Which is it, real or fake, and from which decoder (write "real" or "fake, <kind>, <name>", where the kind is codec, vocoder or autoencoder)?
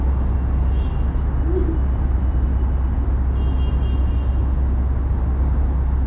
real